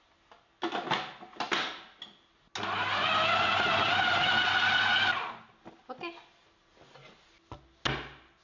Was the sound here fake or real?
real